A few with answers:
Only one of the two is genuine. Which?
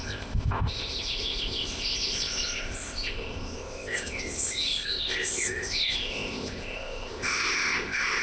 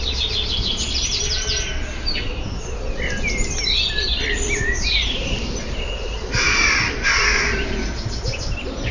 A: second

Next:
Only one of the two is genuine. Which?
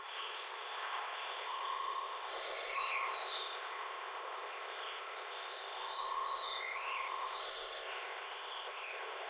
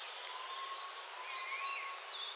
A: second